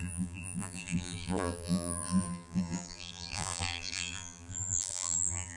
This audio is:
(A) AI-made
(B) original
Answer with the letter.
A